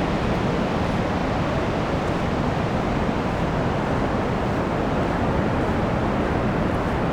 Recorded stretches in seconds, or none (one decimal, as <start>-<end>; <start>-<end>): 0.0-7.1

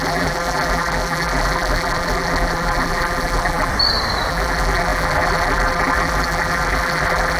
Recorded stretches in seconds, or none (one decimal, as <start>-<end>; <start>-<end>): 3.7-4.3

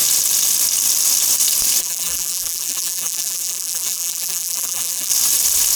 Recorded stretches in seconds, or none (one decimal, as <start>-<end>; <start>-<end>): 0.0-1.8; 5.1-5.8

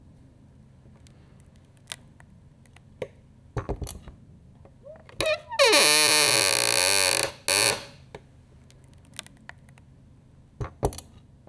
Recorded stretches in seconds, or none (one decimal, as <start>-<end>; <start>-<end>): 0.0-11.5

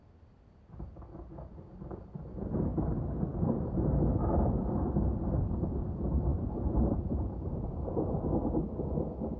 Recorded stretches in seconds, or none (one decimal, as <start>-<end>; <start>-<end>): 0.0-6.3; 8.2-9.4

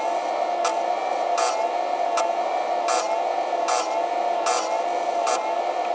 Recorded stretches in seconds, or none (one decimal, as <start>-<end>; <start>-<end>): 0.0-5.9